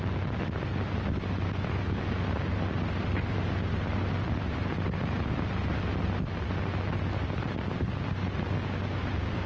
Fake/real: real